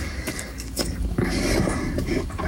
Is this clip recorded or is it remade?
remade